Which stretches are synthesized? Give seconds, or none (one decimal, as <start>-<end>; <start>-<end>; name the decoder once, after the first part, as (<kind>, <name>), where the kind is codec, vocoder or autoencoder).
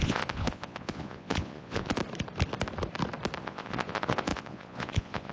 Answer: 0.0-2.0 (vocoder, Vocos); 3.4-5.3